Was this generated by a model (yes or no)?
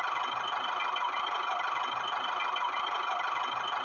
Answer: no